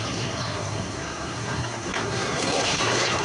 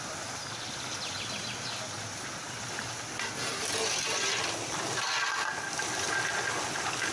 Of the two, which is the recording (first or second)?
second